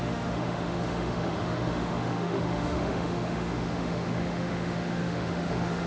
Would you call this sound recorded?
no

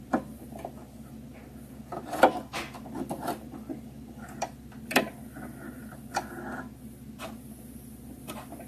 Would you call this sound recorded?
no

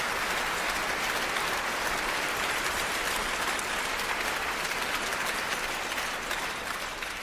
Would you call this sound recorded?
yes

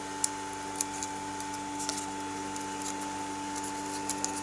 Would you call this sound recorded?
yes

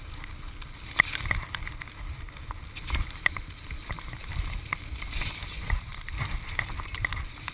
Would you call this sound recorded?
yes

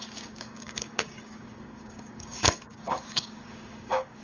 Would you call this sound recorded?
no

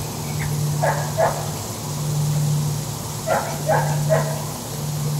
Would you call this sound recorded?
yes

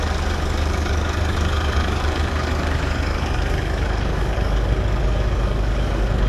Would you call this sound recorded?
no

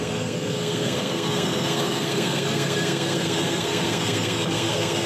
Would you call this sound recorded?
no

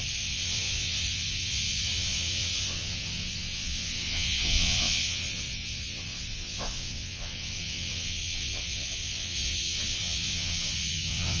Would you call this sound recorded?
no